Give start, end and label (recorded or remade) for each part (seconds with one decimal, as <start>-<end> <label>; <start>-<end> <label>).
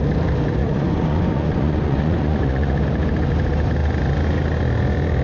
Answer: 0.0-0.6 recorded; 0.6-2.8 remade; 2.8-5.2 recorded